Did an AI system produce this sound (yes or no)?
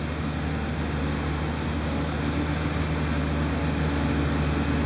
no